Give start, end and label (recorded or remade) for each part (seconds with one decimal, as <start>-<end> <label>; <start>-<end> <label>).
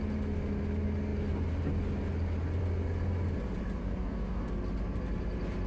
0.0-3.8 recorded; 3.8-4.5 remade; 4.5-5.7 recorded